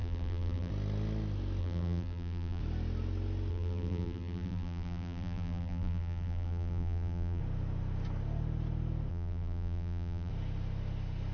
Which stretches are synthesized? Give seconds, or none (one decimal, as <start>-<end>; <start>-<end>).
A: 0.0-0.7; 1.6-2.6; 3.5-7.4; 9.1-10.3